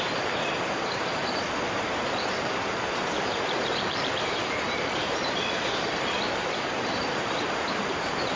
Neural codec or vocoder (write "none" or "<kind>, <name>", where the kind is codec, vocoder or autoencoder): vocoder, BigVGAN v2